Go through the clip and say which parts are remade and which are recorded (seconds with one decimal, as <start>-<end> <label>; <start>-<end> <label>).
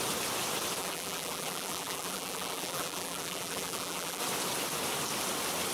0.0-0.8 recorded; 0.8-4.2 remade; 4.2-5.7 recorded